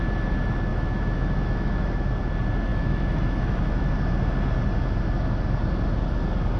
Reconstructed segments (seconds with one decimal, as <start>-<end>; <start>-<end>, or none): 0.7-2.1; 2.7-3.9